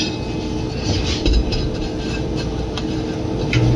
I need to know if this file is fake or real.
real